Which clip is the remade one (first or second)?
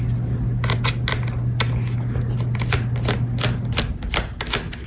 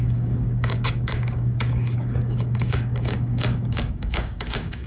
second